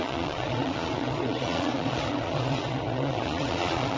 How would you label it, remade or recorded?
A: remade